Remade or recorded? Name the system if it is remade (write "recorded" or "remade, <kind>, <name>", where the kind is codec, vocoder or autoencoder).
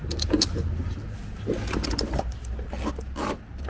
recorded